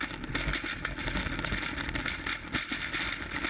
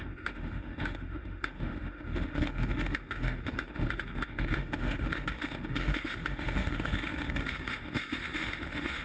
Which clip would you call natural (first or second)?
first